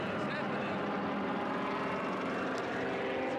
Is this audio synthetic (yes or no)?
no